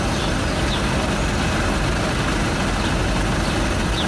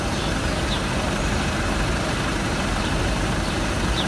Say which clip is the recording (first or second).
first